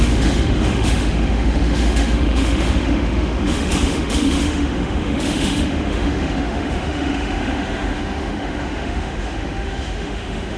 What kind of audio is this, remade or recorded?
remade